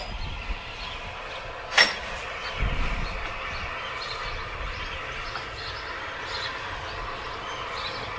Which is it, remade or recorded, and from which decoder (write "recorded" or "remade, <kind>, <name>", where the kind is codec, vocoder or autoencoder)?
recorded